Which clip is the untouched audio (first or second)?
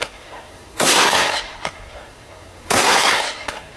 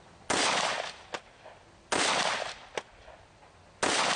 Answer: second